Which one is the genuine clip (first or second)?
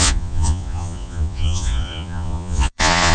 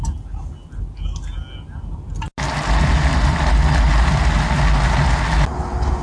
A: second